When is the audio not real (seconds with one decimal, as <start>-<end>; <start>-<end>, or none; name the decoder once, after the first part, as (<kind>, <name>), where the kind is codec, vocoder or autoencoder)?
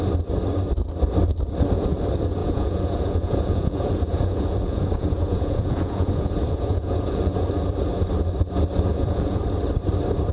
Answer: 2.4-7.4 (vocoder, Vocos); 8.9-9.4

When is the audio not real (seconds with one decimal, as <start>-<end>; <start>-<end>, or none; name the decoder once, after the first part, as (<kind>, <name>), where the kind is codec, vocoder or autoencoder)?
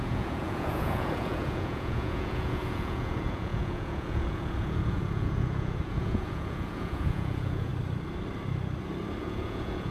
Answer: 0.0-7.7 (vocoder, Vocos); 9.2-9.9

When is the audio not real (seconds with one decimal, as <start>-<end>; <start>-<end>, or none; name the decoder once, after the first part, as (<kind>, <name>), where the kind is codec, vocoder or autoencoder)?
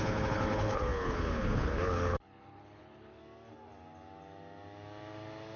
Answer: 0.0-3.2 (codec, HILCodec)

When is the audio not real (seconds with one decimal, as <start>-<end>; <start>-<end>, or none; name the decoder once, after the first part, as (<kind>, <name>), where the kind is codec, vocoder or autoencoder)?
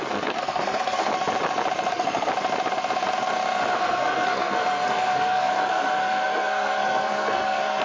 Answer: 0.0-1.1 (codec, SNAC); 1.9-2.3; 3.8-7.8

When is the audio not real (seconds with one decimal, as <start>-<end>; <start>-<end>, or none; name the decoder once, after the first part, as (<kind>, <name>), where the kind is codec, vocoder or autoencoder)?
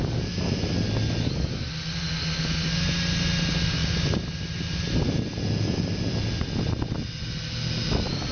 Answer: none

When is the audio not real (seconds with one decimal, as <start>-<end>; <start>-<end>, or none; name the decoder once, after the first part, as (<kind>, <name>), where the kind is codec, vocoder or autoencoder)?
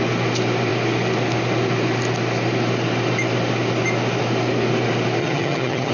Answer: 5.2-5.9 (vocoder, HiFi-GAN)